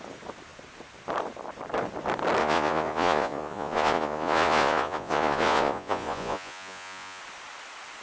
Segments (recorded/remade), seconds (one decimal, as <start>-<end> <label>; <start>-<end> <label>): 0.0-2.4 recorded; 2.4-7.2 remade; 7.2-8.0 recorded